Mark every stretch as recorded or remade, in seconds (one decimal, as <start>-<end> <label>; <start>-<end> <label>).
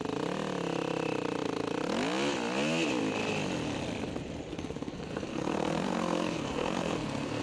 0.0-4.5 recorded; 4.5-7.4 remade